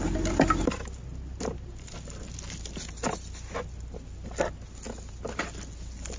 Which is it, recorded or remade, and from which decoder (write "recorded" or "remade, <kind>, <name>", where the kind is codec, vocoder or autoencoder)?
recorded